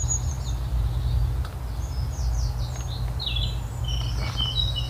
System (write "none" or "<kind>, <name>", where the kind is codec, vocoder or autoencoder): none